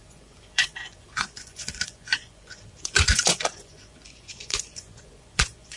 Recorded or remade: remade